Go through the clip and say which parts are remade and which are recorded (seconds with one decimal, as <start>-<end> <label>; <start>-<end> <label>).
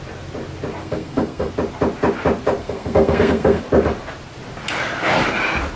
0.0-0.8 recorded; 0.8-1.5 remade; 1.5-2.6 recorded; 2.6-3.6 remade; 3.6-5.8 recorded